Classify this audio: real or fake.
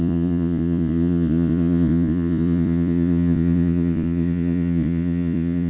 fake